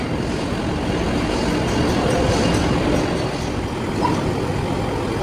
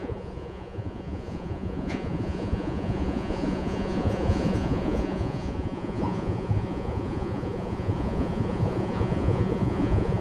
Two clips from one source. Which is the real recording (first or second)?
first